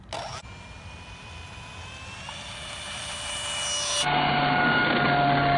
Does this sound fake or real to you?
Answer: real